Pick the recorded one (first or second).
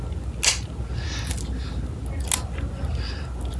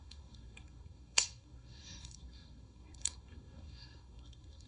first